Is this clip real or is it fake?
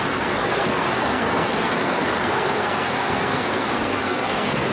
fake